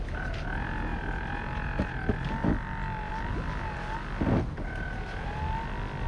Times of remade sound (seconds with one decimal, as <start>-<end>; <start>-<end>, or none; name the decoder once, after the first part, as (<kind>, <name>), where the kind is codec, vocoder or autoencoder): none